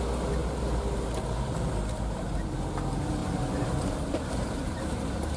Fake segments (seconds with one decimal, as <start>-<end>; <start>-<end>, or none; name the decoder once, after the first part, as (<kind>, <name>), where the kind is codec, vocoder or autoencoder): 0.4-2.6 (vocoder, BigVGAN v2); 3.2-5.4